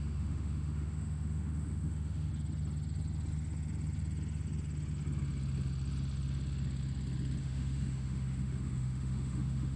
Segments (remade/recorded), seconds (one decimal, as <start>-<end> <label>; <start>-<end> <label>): 0.0-2.3 remade; 2.3-7.4 recorded; 7.4-9.8 remade